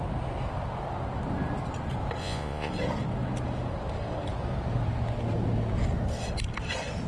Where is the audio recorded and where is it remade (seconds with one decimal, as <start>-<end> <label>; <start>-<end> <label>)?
0.0-2.2 recorded; 2.2-2.7 remade; 2.7-7.1 recorded